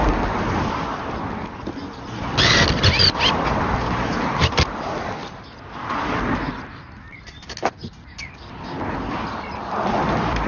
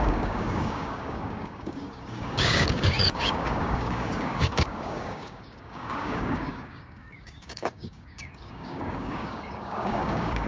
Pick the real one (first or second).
first